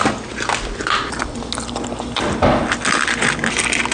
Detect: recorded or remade recorded